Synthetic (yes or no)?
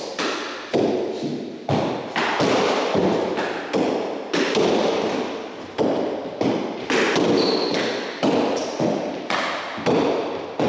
no